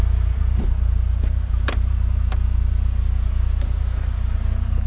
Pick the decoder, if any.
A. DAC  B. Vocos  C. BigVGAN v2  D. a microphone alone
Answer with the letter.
C